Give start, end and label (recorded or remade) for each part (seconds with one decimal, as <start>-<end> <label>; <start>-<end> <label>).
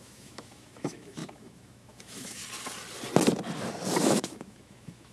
0.0-2.4 remade; 2.4-4.0 recorded; 4.0-5.1 remade